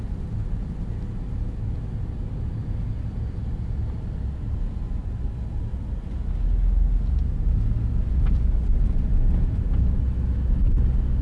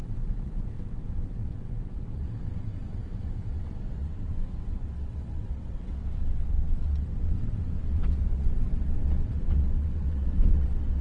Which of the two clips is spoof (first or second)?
second